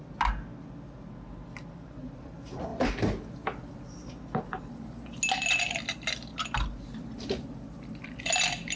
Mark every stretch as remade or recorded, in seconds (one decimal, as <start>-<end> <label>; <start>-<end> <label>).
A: 0.0-8.8 recorded